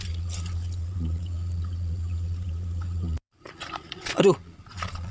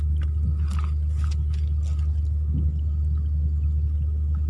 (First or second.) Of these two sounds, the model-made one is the first